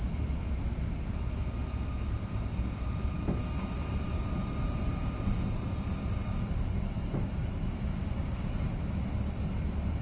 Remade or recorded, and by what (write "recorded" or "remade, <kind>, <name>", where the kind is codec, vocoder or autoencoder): recorded